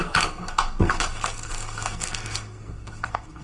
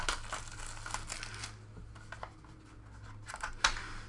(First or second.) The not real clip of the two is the first